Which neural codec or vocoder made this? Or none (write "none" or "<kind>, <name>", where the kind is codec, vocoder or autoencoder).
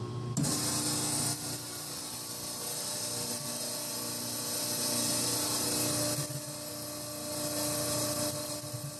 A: none